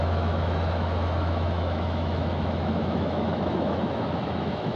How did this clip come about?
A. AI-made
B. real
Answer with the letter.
A